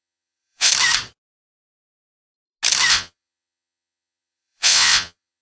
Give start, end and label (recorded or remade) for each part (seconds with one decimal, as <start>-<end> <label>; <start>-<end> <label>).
0.0-0.7 remade; 0.7-2.9 recorded; 2.9-5.4 remade